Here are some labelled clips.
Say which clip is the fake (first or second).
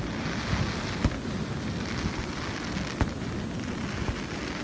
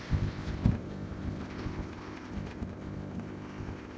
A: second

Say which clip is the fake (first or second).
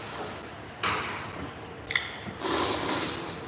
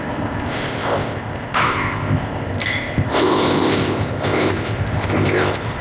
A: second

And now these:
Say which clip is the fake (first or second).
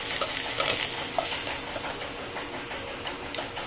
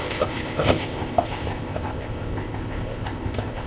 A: second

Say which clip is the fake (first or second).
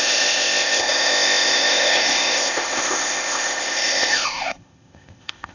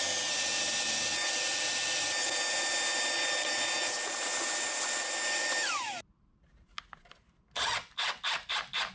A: first